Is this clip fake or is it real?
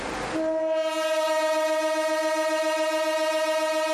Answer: real